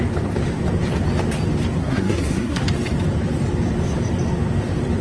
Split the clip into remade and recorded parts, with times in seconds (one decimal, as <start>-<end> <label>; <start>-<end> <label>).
0.0-1.8 recorded; 1.8-2.6 remade; 2.6-5.0 recorded